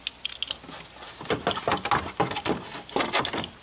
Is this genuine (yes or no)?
yes